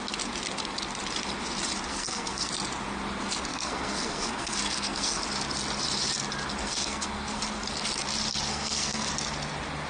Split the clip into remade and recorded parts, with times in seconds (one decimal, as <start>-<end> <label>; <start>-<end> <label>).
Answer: 0.0-1.9 recorded; 1.9-2.5 remade; 2.5-3.5 recorded; 3.5-5.2 remade; 5.2-6.6 recorded; 6.6-7.4 remade; 7.4-8.5 recorded; 8.5-9.1 remade; 9.1-9.9 recorded